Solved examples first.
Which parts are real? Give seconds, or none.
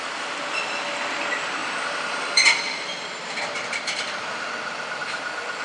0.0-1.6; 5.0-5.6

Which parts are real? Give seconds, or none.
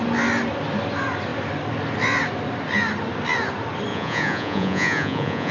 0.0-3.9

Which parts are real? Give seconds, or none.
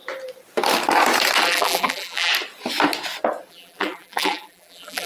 0.0-1.4; 2.3-3.5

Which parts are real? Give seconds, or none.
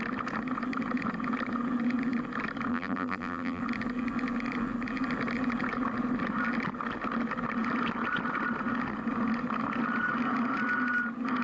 0.0-2.7; 3.6-11.4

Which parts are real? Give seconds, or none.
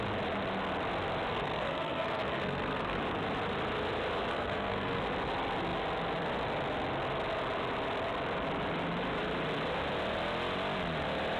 0.0-1.3; 3.0-4.3; 5.0-11.4